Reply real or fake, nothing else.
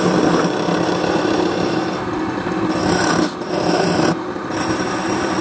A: real